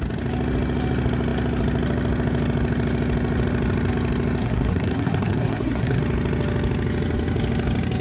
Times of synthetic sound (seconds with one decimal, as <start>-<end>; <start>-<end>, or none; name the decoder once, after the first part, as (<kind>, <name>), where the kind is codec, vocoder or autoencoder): 4.4-6.0 (codec, SNAC)